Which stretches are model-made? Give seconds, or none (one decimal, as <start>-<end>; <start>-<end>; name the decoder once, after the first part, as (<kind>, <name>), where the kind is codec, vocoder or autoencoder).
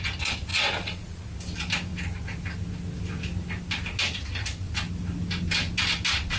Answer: 0.5-1.2 (vocoder, Vocos)